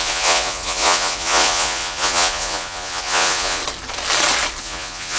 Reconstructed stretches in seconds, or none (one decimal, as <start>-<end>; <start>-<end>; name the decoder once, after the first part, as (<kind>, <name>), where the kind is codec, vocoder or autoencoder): 0.0-3.6 (vocoder, Vocos); 4.6-5.2